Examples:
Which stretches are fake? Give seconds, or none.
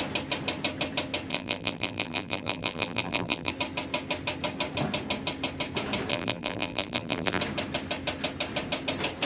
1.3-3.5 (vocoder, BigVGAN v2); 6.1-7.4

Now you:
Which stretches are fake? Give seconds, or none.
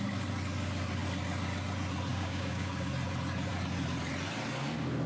2.1-2.9 (codec, DAC)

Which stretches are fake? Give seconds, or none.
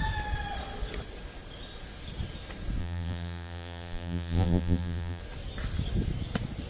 2.8-5.2 (vocoder, BigVGAN v2)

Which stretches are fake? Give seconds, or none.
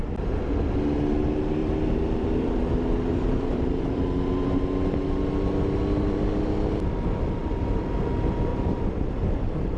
1.6-4.3 (vocoder, BigVGAN v2); 8.5-9.8